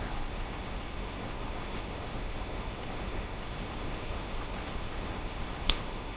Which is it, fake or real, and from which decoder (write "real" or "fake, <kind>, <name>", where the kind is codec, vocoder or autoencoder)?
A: fake, codec, SNAC